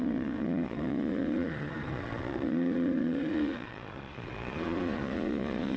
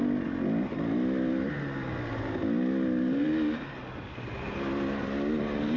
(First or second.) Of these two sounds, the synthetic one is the first